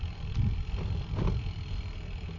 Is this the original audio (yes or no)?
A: yes